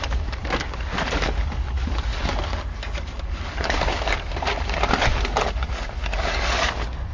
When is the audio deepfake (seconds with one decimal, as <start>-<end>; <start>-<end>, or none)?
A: 0.0-7.1